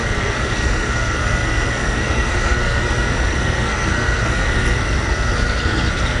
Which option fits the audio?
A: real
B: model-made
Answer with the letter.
B